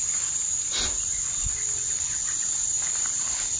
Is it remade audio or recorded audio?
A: recorded